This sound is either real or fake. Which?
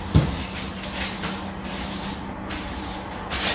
real